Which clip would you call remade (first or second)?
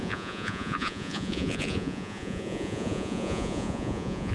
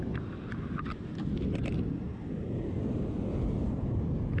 first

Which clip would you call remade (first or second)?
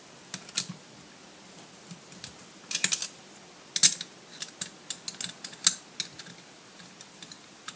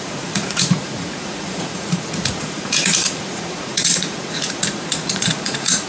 second